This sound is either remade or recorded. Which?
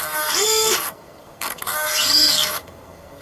remade